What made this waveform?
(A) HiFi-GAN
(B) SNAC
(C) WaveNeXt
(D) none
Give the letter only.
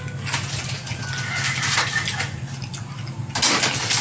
D